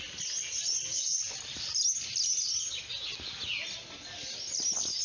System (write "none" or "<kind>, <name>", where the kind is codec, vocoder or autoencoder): none